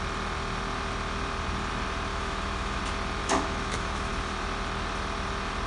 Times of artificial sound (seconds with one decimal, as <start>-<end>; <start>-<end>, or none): 2.1-2.8; 3.2-4.1